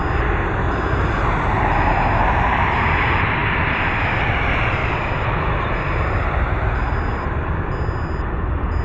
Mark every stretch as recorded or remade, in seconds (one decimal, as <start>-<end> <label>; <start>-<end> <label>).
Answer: 0.0-3.4 recorded; 3.4-4.0 remade; 4.0-4.8 recorded; 4.8-7.5 remade; 7.5-8.8 recorded